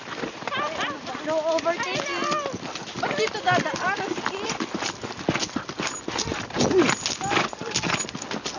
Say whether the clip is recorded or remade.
recorded